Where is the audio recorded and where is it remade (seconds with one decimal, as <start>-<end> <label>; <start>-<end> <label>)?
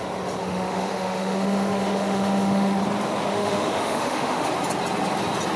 0.0-0.4 recorded; 0.4-2.8 remade; 2.8-3.3 recorded; 3.3-4.5 remade; 4.5-5.6 recorded